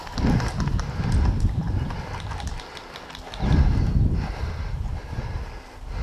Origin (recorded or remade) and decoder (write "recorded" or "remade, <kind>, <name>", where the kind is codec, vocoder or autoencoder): recorded